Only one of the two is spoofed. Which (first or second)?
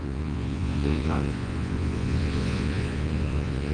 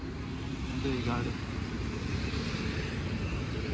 first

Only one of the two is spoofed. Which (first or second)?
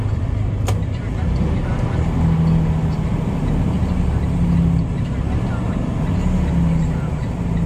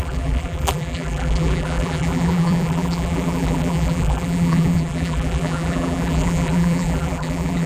second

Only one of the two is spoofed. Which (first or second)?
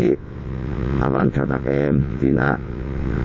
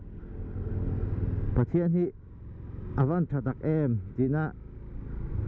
first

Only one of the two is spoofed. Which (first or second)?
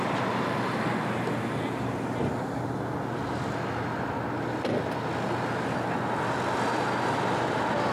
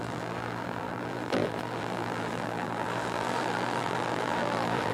second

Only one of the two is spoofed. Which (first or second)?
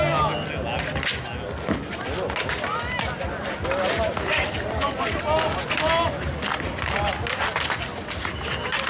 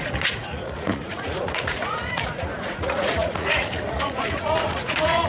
second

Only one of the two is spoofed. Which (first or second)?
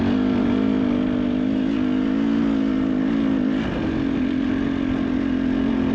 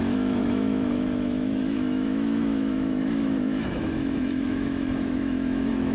second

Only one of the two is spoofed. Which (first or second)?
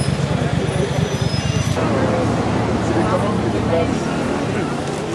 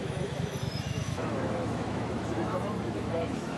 second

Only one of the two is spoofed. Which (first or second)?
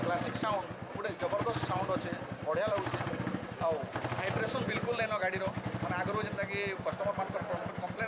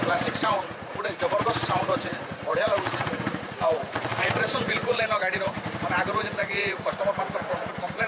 second